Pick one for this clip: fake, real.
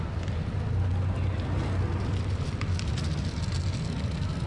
real